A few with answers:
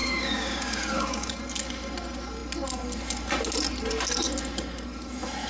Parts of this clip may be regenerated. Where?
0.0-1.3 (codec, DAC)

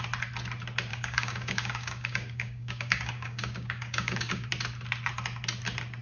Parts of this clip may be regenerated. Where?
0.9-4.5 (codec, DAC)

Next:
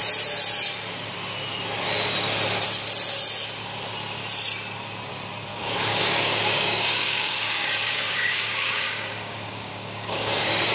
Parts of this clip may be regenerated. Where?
5.5-10.7 (codec, DAC)